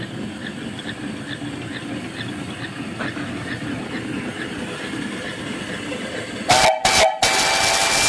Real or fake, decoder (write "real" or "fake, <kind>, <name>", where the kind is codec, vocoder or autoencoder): real